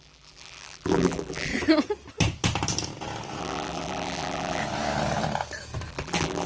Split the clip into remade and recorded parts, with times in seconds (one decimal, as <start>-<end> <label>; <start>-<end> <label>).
0.0-1.5 remade; 1.5-3.4 recorded; 3.4-4.6 remade; 4.6-5.9 recorded; 5.9-6.5 remade